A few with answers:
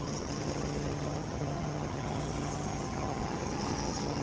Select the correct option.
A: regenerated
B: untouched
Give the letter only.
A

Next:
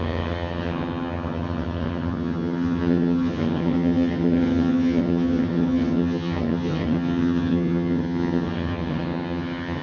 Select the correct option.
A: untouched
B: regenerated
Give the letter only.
B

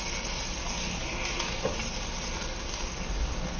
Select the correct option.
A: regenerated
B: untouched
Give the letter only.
B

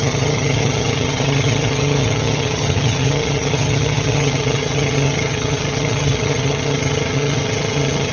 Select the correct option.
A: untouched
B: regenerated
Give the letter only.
B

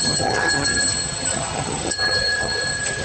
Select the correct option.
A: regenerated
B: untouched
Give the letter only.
A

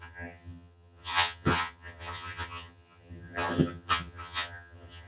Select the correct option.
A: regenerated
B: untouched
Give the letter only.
A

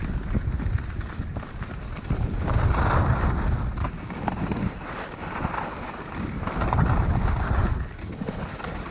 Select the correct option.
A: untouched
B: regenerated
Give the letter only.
A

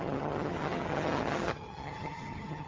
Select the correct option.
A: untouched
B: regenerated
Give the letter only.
B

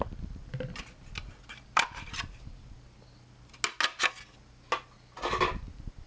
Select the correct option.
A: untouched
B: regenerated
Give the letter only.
A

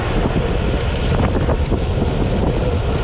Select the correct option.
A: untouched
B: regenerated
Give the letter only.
A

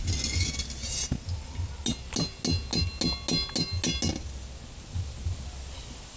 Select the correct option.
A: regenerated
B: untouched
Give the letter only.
B